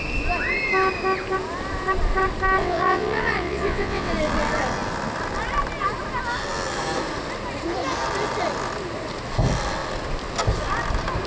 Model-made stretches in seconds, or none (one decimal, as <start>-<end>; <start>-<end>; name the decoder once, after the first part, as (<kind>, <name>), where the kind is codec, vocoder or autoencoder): 2.6-4.1 (vocoder, WaveNeXt)